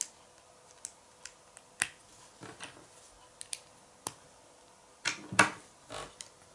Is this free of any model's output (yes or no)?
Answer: yes